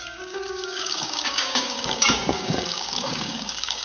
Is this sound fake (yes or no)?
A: yes